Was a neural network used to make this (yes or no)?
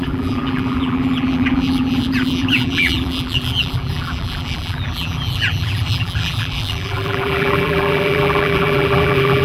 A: yes